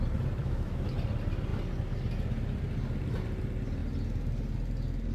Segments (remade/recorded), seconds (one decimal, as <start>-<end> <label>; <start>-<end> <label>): 0.0-0.4 recorded; 0.4-0.9 remade; 0.9-5.1 recorded